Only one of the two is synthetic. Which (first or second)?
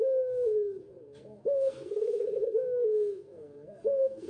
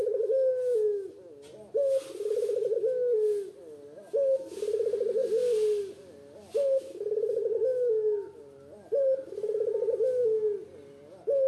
first